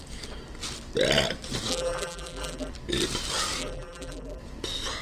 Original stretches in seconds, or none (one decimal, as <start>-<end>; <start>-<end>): 0.0-1.7; 2.7-3.6; 4.4-5.0